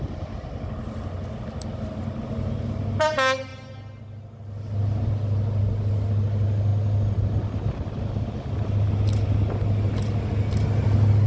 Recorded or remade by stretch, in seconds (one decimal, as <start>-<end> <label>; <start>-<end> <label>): 0.0-11.3 recorded

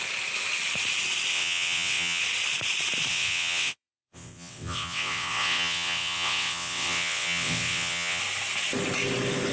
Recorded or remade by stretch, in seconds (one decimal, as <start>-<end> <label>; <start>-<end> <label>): 0.0-1.3 recorded; 1.3-2.2 remade; 2.2-3.1 recorded; 3.1-8.2 remade; 8.2-9.5 recorded

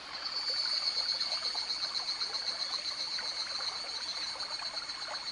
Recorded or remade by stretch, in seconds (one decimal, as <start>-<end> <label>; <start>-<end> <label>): 0.0-5.3 recorded

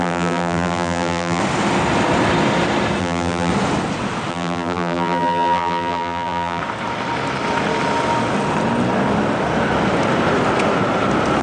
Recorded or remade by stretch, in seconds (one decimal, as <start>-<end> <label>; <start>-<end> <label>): 0.0-1.4 remade; 1.4-3.0 recorded; 3.0-3.5 remade; 3.5-4.3 recorded; 4.3-6.6 remade; 6.6-11.4 recorded

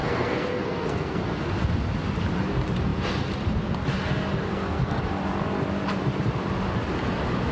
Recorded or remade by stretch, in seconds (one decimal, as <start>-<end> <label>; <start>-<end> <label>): 0.0-1.5 remade; 1.5-4.5 recorded; 4.5-5.0 remade; 5.0-7.5 recorded

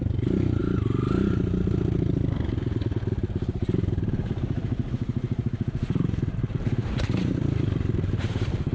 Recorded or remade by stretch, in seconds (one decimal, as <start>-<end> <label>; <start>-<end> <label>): 0.0-0.6 remade; 0.6-3.1 recorded; 3.1-8.7 remade

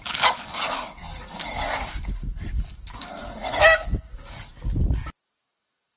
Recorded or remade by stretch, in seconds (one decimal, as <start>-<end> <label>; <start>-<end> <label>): 0.0-4.5 remade; 4.5-5.2 recorded; 5.2-6.0 remade

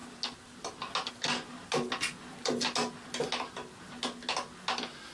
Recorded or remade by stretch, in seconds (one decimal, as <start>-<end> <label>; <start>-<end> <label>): 0.0-5.1 recorded